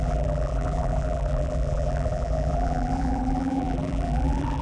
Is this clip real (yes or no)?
no